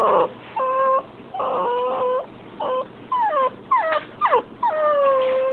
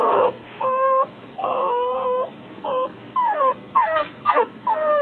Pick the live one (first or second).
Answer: first